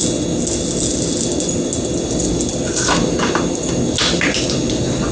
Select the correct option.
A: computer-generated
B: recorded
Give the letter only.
B